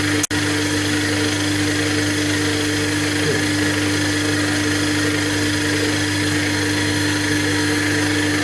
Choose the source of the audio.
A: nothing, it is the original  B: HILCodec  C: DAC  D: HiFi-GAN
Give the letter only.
A